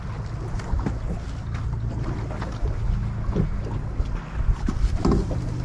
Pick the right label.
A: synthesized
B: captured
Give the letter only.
B